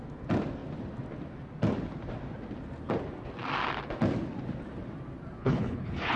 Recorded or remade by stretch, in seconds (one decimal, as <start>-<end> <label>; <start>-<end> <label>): 0.0-5.4 recorded; 5.4-6.2 remade